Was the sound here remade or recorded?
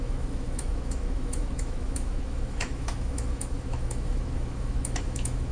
remade